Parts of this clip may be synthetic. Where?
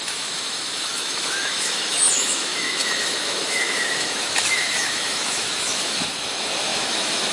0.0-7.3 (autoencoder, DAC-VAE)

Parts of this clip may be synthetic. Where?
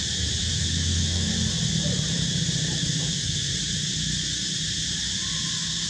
0.4-1.3 (autoencoder, DAC-VAE); 2.8-3.5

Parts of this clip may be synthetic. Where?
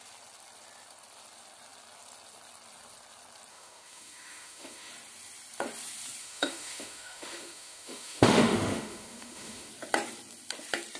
3.5-4.9 (autoencoder, DAC-VAE); 6.2-9.7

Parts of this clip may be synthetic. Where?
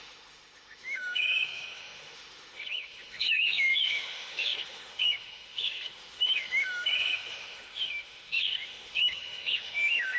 0.0-10.2 (autoencoder, DAC-VAE)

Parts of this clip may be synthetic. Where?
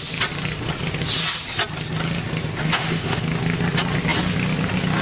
2.6-3.2 (autoencoder, DAC-VAE)